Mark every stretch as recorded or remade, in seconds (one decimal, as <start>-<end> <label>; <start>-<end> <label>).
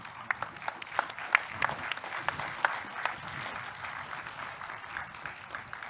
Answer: 0.0-5.9 recorded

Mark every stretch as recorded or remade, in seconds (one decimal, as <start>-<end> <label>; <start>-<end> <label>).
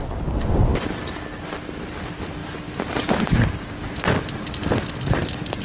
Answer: 0.0-5.6 recorded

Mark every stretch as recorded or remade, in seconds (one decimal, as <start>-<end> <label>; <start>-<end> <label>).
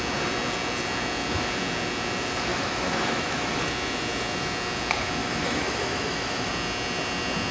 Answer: 0.0-2.5 recorded; 2.5-3.6 remade; 3.6-5.2 recorded; 5.2-6.5 remade; 6.5-7.5 recorded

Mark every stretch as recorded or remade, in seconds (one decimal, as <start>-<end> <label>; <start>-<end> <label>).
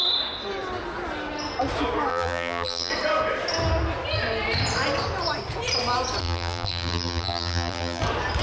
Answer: 0.0-2.1 recorded; 2.1-2.9 remade; 2.9-6.2 recorded; 6.2-8.0 remade; 8.0-8.4 recorded